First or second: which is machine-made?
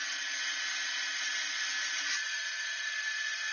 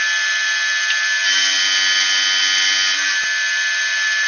first